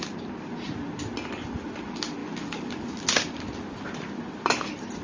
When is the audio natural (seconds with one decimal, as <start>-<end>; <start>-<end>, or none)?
0.0-5.0